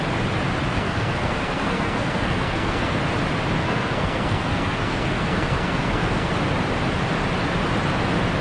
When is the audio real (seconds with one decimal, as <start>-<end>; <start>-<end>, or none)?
0.0-0.7; 3.0-3.6; 6.3-8.4

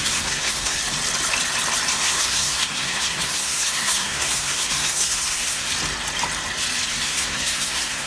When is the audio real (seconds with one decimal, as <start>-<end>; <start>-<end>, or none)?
0.8-1.9; 5.7-6.9

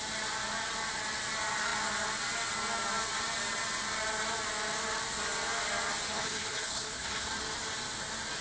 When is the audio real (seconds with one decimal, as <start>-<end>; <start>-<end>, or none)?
0.0-6.1; 7.3-8.4